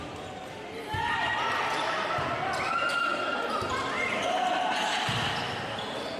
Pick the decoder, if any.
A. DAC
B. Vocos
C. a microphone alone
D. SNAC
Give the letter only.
C